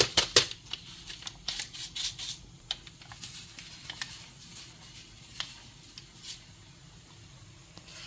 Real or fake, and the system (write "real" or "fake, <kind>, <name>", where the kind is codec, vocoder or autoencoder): real